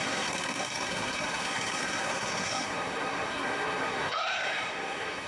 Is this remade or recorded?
remade